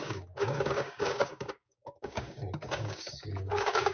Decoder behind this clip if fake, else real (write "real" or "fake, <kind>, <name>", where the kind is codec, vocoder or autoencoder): fake, codec, DAC